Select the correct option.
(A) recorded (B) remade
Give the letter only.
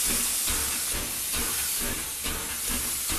A